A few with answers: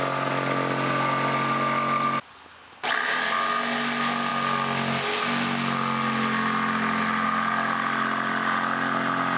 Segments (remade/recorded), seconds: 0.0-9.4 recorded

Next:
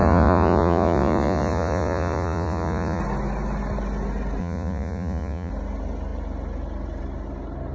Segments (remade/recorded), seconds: 0.0-3.0 remade; 3.0-4.4 recorded; 4.4-5.5 remade; 5.5-7.7 recorded

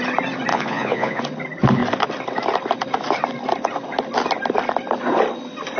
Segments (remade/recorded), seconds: 0.0-0.5 recorded; 0.5-1.2 remade; 1.2-5.8 recorded

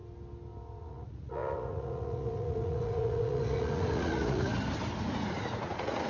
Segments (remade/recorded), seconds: 0.0-0.8 recorded; 0.8-4.5 remade; 4.5-5.3 recorded; 5.3-6.1 remade

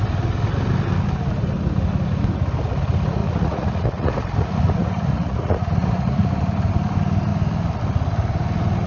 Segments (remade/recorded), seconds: 0.0-3.2 recorded; 3.2-6.3 remade; 6.3-8.9 recorded

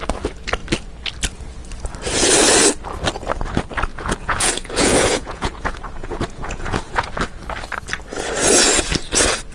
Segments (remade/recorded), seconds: 0.0-3.9 recorded; 3.9-7.1 remade; 7.1-9.5 recorded

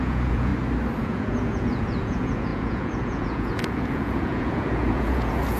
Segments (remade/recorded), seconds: 0.0-0.5 remade; 0.5-1.0 recorded; 1.0-5.6 remade